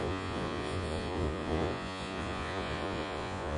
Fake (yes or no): yes